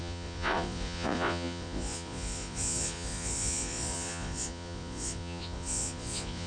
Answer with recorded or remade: remade